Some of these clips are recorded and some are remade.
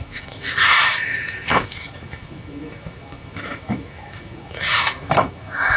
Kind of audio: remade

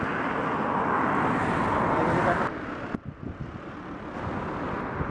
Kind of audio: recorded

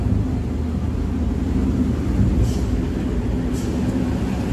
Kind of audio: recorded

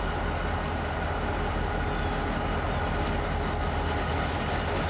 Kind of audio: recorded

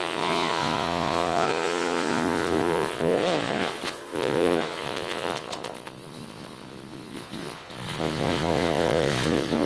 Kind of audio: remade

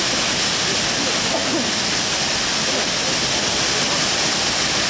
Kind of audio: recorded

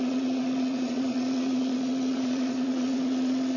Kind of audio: remade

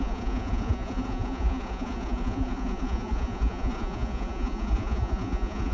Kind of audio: remade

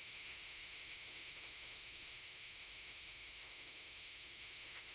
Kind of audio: remade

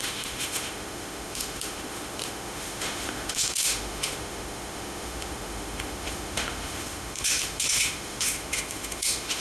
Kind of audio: remade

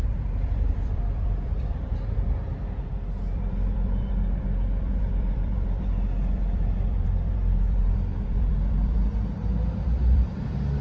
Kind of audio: remade